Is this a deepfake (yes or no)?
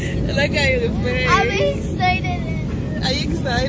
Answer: no